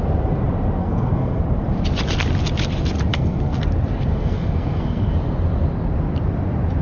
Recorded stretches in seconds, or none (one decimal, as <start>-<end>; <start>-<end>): 0.0-0.8; 1.4-3.1; 3.6-4.1; 5.1-6.8